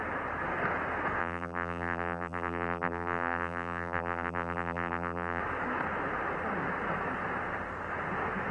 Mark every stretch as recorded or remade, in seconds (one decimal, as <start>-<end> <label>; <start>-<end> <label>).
0.0-1.2 recorded; 1.2-5.4 remade; 5.4-8.5 recorded